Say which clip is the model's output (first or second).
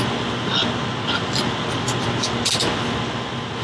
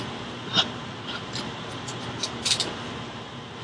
second